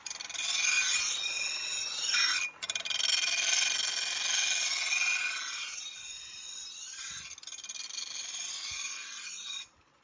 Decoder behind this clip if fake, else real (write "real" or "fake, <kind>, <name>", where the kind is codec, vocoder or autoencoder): real